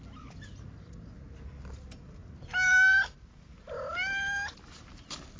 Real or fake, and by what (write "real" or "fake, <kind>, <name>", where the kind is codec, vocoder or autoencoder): real